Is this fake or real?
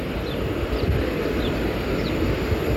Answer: real